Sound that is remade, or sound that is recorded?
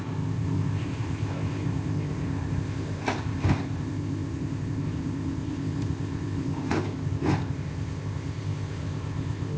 remade